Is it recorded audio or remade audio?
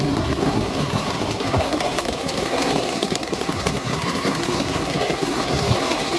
remade